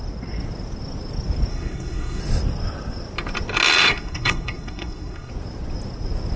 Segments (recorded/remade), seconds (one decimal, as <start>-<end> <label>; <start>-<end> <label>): 0.0-1.5 recorded; 1.5-2.2 remade; 2.2-3.8 recorded; 3.8-5.3 remade; 5.3-6.4 recorded